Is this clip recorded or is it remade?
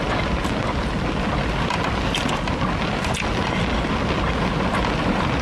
recorded